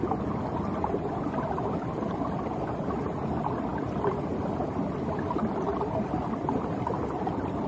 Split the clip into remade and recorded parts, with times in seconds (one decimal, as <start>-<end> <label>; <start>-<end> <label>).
0.0-7.7 recorded